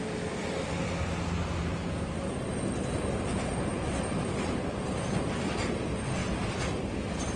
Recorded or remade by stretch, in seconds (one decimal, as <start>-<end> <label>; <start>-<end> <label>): 0.0-7.4 recorded